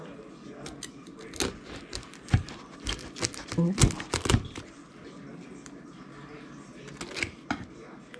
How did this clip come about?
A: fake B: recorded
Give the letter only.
B